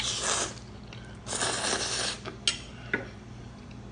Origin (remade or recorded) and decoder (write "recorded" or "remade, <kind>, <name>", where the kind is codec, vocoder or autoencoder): recorded